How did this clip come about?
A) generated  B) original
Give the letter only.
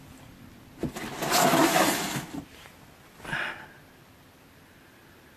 B